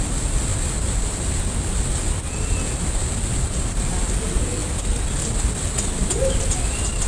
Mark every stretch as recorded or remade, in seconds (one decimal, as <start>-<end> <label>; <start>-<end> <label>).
0.0-7.1 recorded